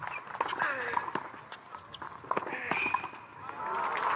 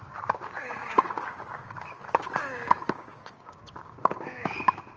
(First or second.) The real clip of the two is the first